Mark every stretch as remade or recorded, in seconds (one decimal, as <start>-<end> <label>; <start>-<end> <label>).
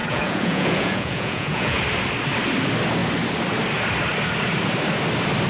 0.0-1.8 remade; 1.8-5.5 recorded